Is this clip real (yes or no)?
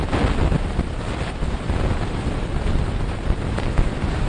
yes